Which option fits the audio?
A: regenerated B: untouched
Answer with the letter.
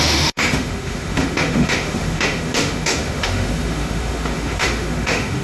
A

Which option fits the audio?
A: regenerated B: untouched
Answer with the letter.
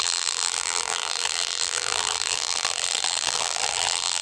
A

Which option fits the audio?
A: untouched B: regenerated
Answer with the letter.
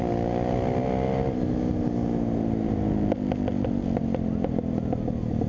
A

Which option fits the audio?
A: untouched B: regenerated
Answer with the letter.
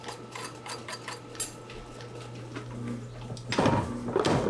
A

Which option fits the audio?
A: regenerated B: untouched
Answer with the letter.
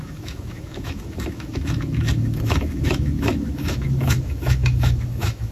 A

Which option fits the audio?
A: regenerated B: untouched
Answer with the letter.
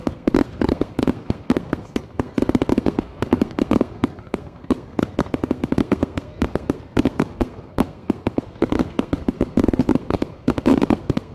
A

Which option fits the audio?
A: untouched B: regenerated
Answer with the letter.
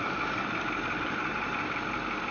A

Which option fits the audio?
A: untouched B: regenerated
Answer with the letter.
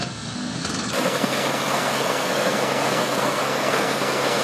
B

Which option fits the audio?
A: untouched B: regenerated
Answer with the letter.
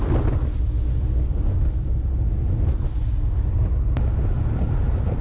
A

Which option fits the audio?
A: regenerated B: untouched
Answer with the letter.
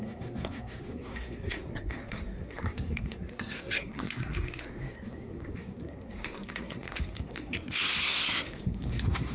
A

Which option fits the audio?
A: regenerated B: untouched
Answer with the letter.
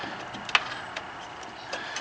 B